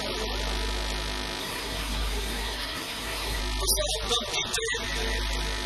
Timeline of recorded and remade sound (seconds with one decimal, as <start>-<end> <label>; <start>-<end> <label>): 0.0-1.4 recorded; 1.4-3.4 remade; 3.4-5.7 recorded